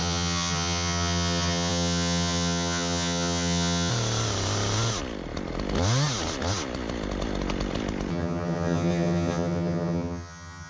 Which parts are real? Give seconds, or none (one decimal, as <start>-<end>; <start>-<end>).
3.9-8.1